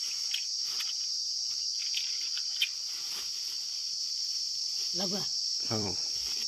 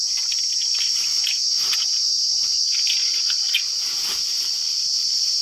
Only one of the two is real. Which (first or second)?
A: second